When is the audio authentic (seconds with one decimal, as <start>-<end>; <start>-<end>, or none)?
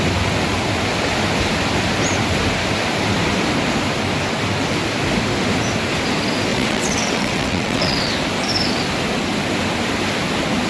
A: 0.0-6.5; 8.1-10.7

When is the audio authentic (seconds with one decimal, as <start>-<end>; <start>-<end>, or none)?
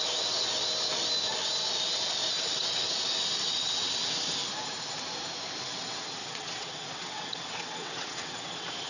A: 0.5-2.4; 4.3-5.6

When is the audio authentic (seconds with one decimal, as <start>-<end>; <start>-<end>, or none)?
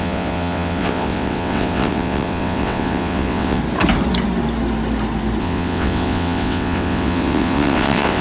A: 3.6-5.4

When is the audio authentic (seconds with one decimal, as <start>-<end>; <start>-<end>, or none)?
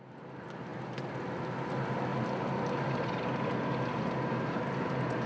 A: 0.0-5.3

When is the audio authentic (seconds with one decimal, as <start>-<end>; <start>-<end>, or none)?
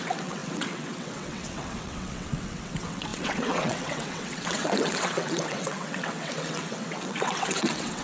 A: none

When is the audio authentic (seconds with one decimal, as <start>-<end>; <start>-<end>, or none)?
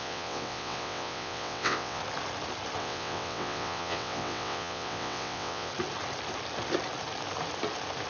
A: 2.0-2.8; 5.7-8.1